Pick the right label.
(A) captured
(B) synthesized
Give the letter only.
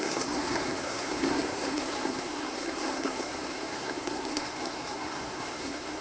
B